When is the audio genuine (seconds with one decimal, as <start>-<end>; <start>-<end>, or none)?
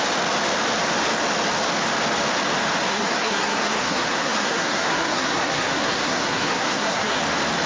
0.0-2.9; 7.2-7.7